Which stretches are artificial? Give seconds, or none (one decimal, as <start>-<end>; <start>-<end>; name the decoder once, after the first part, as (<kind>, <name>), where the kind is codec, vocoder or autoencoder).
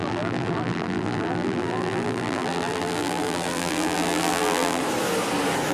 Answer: 0.0-4.8 (vocoder, BigVGAN v2)